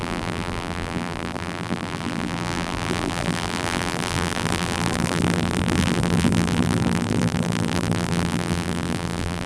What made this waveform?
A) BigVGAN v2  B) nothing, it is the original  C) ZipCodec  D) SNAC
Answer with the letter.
A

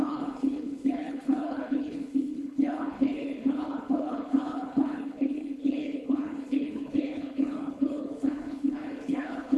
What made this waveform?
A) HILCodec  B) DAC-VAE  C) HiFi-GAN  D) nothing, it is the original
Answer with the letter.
A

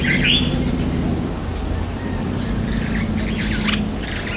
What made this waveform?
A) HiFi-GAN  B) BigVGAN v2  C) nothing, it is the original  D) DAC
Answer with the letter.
C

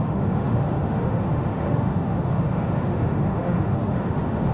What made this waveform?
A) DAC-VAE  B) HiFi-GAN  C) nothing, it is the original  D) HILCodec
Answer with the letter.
A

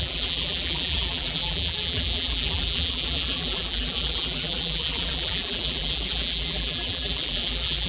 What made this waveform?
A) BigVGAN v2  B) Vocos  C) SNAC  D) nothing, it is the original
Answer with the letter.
A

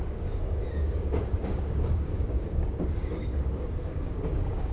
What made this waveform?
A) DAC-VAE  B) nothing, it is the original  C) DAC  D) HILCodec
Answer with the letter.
C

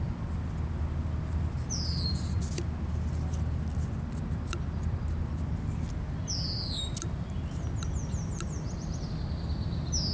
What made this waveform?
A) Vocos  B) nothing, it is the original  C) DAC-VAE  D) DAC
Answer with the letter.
B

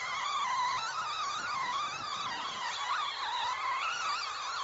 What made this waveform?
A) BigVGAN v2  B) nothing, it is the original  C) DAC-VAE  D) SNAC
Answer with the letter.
B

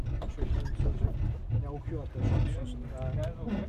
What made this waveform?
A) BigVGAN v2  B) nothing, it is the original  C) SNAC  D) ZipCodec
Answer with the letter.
B